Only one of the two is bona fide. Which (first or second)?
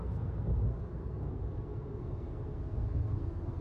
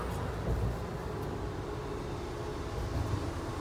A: second